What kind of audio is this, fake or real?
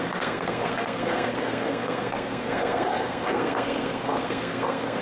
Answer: fake